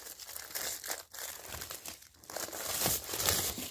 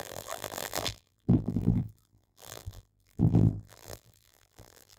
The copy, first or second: second